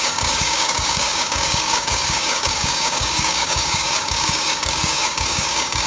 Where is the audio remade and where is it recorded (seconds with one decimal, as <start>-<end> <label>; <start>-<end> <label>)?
0.0-5.9 remade